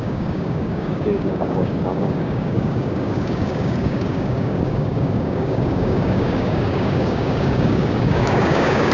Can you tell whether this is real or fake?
fake